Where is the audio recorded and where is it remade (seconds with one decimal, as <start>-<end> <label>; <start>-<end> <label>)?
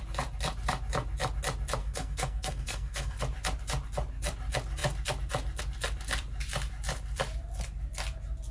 0.0-1.8 recorded; 1.8-3.2 remade; 3.2-8.5 recorded